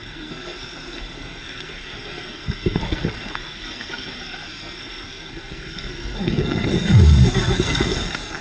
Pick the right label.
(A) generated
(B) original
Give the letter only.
A